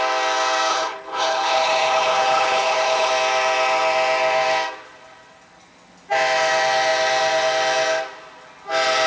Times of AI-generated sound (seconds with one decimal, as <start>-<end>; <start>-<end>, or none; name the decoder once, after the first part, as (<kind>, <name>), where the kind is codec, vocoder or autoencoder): 0.7-3.1 (codec, HILCodec)